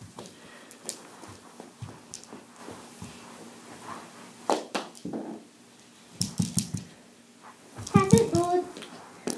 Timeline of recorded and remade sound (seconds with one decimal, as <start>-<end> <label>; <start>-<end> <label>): 0.0-2.6 recorded; 2.6-4.5 remade; 4.5-5.0 recorded; 5.0-7.2 remade; 7.2-9.4 recorded